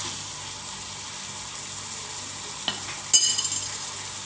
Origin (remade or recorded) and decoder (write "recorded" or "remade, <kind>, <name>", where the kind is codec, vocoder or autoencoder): recorded